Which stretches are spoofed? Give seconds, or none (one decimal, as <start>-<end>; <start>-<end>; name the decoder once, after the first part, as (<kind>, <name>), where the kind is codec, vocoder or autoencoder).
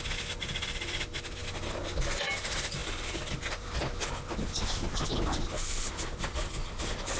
none